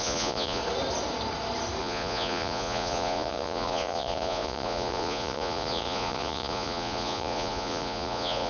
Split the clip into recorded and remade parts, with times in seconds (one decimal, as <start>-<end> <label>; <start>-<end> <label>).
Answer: 0.0-0.6 remade; 0.6-1.8 recorded; 1.8-8.5 remade